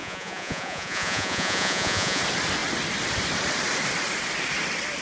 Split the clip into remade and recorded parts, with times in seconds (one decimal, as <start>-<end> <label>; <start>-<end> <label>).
0.0-2.2 remade; 2.2-5.0 recorded